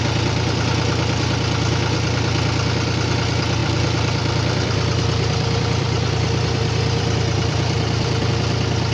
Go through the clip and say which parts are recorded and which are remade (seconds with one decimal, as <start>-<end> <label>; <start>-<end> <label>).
0.0-3.6 recorded; 3.6-8.3 remade; 8.3-8.9 recorded